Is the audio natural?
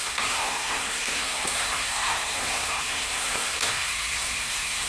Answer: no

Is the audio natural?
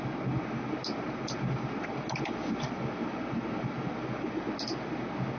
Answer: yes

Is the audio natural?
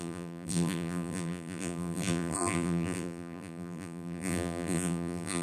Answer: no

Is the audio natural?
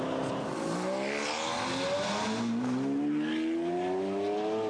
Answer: yes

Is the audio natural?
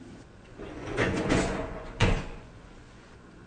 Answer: no